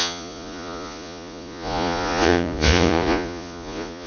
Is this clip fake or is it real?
fake